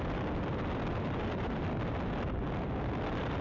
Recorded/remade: recorded